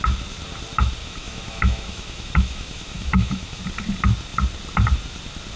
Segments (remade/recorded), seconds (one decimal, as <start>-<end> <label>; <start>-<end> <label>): 0.0-1.0 recorded; 1.0-3.6 remade; 3.6-5.6 recorded